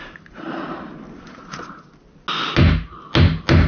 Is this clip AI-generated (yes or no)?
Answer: no